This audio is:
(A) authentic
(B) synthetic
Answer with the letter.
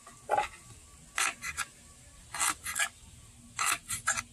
A